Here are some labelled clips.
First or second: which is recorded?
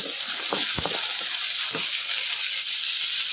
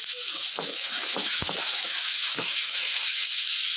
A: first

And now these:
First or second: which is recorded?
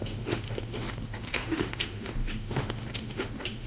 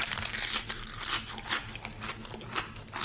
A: second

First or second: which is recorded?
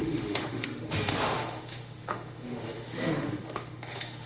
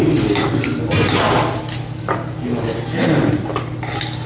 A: second